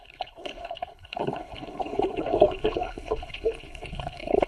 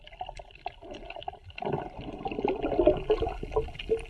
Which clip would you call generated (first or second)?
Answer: first